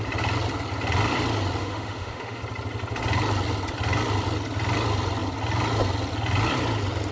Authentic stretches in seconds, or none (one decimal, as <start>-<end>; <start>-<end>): 0.0-1.6; 2.4-7.1